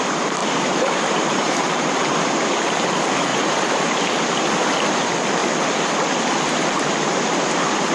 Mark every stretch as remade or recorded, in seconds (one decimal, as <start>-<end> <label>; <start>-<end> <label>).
0.0-0.4 recorded; 0.4-2.0 remade; 2.0-3.3 recorded; 3.3-4.0 remade; 4.0-7.9 recorded

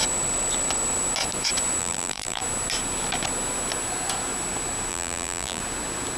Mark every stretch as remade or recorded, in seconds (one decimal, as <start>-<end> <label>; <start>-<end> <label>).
0.0-1.8 recorded; 1.8-2.4 remade; 2.4-4.9 recorded; 4.9-5.6 remade; 5.6-6.2 recorded

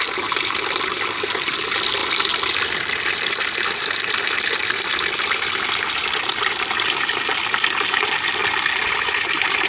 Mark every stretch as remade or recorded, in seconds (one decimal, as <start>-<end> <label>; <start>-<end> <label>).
0.0-8.4 remade; 8.4-8.9 recorded; 8.9-9.7 remade

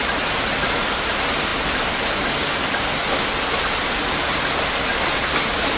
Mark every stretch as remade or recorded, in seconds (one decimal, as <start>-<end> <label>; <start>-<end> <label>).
0.0-5.8 recorded

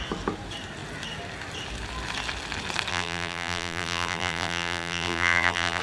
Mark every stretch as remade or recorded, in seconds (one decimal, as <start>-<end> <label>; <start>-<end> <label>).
0.0-2.9 recorded; 2.9-5.8 remade